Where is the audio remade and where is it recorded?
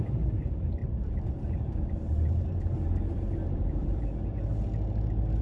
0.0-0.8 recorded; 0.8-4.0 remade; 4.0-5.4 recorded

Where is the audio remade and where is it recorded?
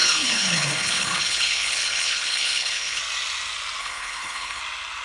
0.0-3.0 remade; 3.0-3.8 recorded; 3.8-4.6 remade; 4.6-5.0 recorded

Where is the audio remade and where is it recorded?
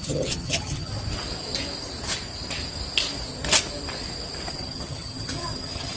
0.0-0.9 remade; 0.9-4.5 recorded; 4.5-6.0 remade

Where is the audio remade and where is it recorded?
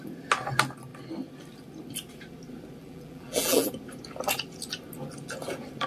0.0-2.8 recorded; 2.8-3.7 remade; 3.7-5.9 recorded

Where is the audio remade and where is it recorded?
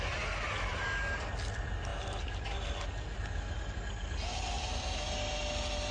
0.0-5.9 recorded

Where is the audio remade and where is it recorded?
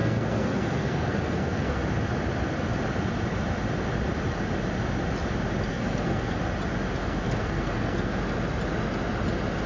0.0-1.8 remade; 1.8-5.7 recorded; 5.7-6.4 remade; 6.4-7.0 recorded; 7.0-8.2 remade; 8.2-9.7 recorded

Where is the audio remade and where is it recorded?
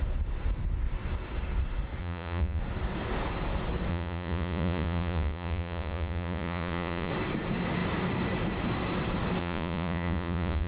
0.0-2.0 recorded; 2.0-2.6 remade; 2.6-3.9 recorded; 3.9-7.1 remade; 7.1-9.4 recorded; 9.4-10.7 remade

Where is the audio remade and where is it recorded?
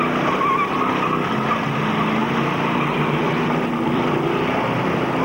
0.0-2.2 recorded; 2.2-4.8 remade; 4.8-5.2 recorded